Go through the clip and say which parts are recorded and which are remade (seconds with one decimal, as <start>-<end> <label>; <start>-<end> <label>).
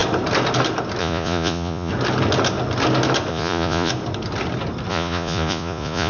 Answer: 0.0-1.0 recorded; 1.0-1.9 remade; 1.9-3.3 recorded; 3.3-3.9 remade; 3.9-4.9 recorded; 4.9-6.1 remade